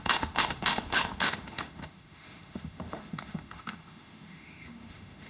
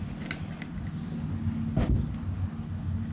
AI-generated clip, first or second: first